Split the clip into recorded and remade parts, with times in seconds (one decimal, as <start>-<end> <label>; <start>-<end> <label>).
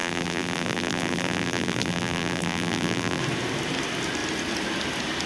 0.0-3.2 remade; 3.2-5.3 recorded